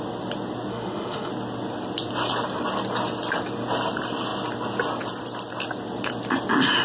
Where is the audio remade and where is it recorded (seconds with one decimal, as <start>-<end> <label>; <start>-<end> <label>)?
0.0-0.7 recorded; 0.7-1.3 remade; 1.3-6.8 recorded